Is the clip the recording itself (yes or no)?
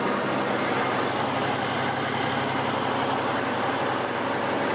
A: yes